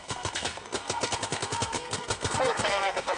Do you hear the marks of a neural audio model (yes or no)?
yes